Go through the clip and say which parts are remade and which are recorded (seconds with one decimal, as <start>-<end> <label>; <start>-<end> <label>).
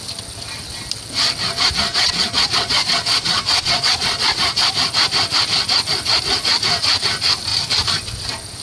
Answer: 0.0-1.9 recorded; 1.9-4.7 remade; 4.7-8.6 recorded